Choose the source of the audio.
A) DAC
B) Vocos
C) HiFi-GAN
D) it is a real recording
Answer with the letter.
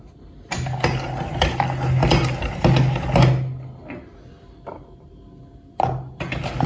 D